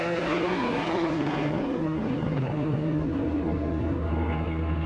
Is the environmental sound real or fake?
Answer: fake